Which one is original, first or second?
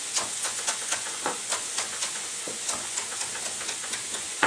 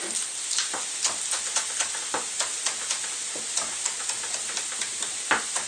second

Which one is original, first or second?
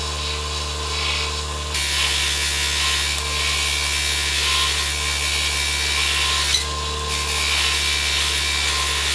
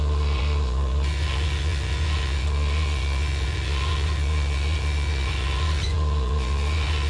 first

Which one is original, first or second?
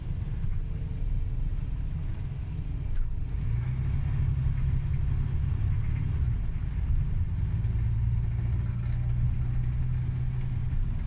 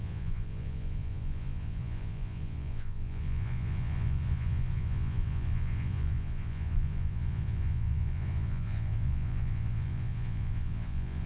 first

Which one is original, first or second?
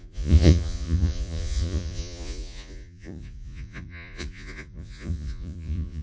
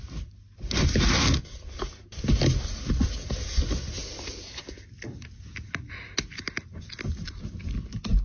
second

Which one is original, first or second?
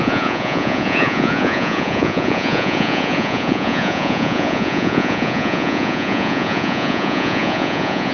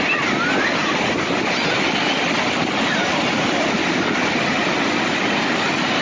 second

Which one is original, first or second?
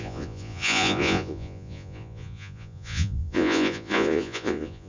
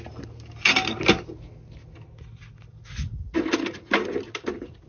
second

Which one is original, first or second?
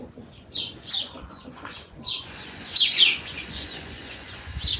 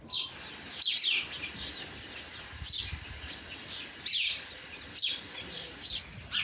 second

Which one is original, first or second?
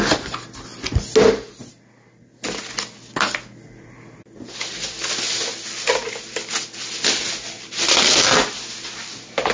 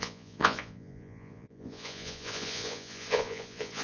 first